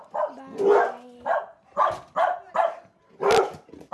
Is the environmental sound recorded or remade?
recorded